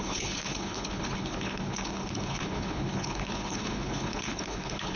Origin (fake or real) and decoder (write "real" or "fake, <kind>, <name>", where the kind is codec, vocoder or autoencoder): fake, codec, HILCodec